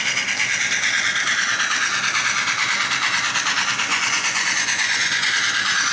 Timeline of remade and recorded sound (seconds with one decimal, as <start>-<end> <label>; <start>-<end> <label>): 0.0-3.9 recorded; 3.9-5.3 remade; 5.3-5.9 recorded